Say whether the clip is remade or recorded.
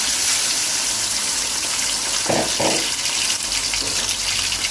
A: recorded